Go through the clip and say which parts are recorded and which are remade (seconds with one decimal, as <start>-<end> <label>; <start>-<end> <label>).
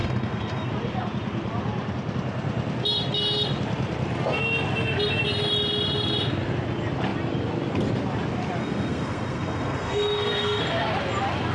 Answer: 0.0-0.7 remade; 0.7-8.6 recorded; 8.6-10.6 remade; 10.6-11.5 recorded